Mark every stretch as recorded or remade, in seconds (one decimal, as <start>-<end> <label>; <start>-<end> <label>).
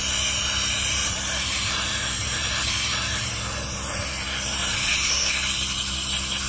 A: 0.0-1.0 recorded; 1.0-3.3 remade; 3.3-4.6 recorded; 4.6-5.1 remade; 5.1-6.5 recorded